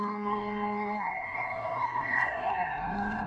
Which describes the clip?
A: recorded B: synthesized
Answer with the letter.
B